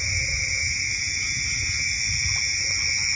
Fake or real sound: real